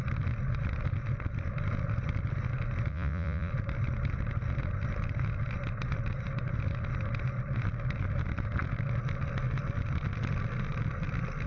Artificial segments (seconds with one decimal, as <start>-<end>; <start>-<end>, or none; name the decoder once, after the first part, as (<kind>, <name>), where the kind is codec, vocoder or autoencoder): 2.9-3.5 (vocoder, Vocos)

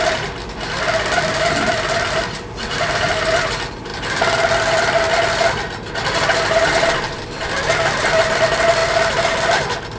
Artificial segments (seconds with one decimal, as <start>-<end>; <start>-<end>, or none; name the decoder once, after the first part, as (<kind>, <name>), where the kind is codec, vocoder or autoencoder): none

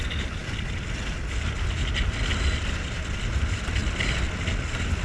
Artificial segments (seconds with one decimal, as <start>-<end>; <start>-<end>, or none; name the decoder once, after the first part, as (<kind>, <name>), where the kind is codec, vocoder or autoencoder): none

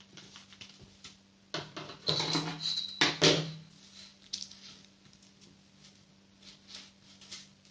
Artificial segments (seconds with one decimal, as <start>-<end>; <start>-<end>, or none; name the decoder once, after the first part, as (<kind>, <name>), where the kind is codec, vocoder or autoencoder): none